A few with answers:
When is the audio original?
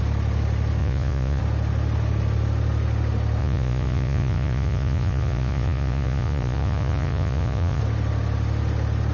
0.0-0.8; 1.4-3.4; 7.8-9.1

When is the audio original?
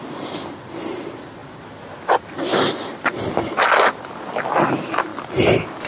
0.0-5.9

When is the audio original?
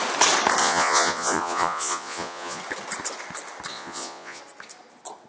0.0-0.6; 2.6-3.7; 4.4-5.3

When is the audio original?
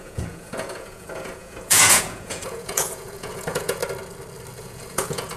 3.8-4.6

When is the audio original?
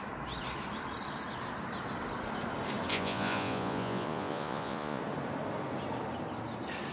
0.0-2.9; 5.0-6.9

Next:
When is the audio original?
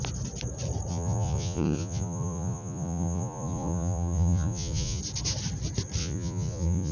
0.0-0.9; 5.0-6.0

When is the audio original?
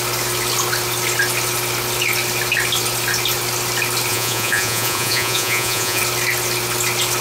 0.0-4.1; 6.0-7.2